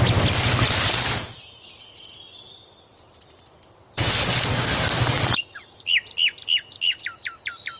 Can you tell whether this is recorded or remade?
recorded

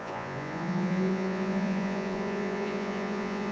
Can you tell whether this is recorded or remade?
remade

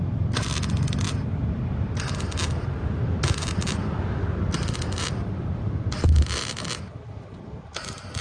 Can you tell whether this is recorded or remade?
recorded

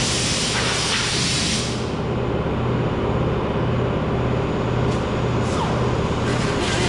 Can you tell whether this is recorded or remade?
recorded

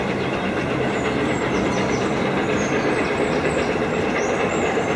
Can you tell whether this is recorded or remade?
remade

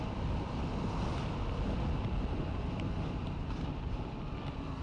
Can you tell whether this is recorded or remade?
recorded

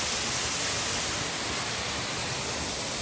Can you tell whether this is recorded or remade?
recorded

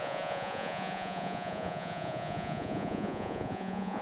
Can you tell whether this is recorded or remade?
remade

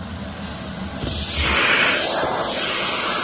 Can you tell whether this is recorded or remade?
recorded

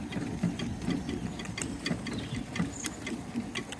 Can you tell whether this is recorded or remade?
recorded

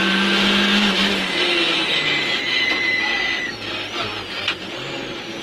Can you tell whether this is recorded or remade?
recorded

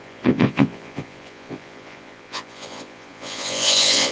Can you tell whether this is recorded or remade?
remade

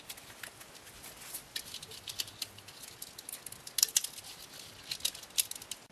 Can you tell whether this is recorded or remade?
recorded